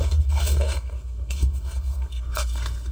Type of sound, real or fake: fake